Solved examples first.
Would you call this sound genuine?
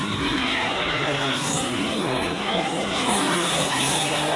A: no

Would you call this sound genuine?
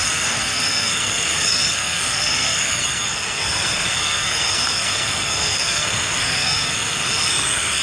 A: no